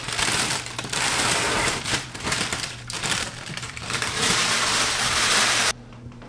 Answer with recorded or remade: remade